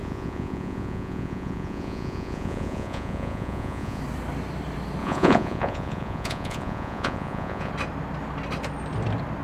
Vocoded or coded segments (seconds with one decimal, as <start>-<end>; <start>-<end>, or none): 0.0-4.0; 5.0-7.7